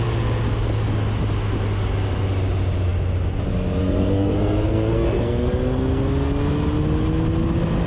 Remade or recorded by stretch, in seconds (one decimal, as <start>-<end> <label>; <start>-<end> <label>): 0.0-3.8 recorded; 3.8-6.0 remade; 6.0-7.9 recorded